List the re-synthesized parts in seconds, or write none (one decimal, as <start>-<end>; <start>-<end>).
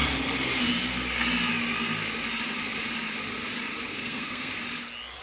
3.9-4.5